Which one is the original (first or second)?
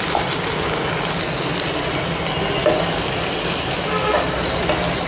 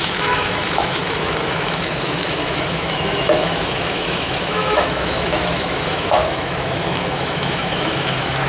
first